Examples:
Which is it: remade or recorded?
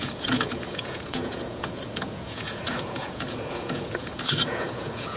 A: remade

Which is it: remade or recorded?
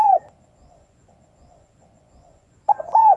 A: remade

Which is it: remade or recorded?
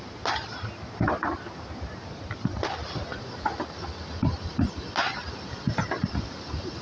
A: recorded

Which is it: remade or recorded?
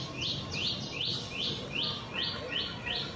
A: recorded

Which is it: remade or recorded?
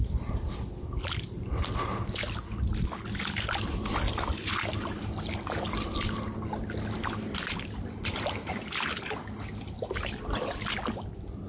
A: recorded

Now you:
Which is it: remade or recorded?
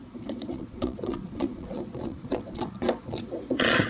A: remade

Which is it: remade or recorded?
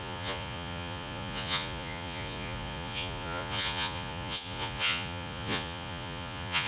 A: remade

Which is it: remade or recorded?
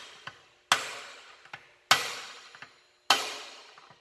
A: recorded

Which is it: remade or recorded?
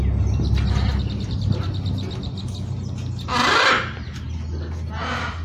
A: recorded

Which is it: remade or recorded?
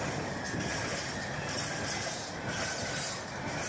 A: recorded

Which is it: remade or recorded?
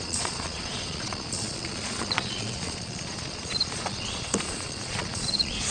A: remade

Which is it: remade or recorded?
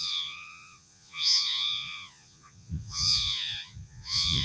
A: remade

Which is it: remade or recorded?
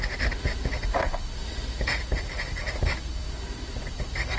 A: recorded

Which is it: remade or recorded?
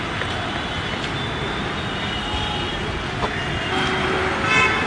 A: recorded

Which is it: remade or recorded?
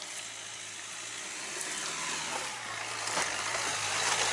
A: recorded